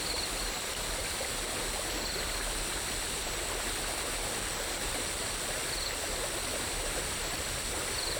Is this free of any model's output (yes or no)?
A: no